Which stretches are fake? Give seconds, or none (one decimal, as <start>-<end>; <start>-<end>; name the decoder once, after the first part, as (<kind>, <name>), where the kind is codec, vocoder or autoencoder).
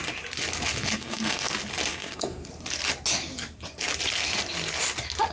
0.7-1.5 (codec, SNAC); 1.9-2.5